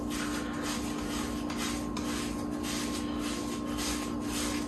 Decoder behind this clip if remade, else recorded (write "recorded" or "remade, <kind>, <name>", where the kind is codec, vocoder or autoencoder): recorded